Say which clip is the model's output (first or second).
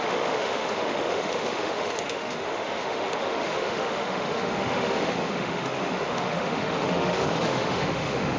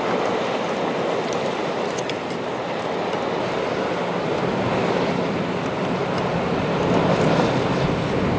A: first